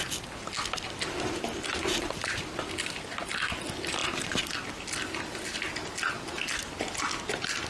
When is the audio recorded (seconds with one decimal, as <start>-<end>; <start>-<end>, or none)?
0.0-7.7